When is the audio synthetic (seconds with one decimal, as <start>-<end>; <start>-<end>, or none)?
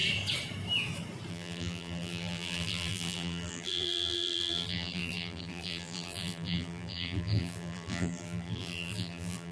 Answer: 1.3-9.5